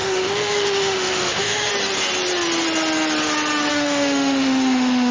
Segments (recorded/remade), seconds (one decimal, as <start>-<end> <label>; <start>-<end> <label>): 0.0-1.7 remade; 1.7-3.7 recorded; 3.7-5.1 remade

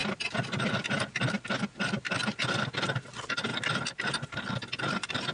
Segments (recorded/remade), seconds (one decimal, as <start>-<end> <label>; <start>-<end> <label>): 0.0-5.3 recorded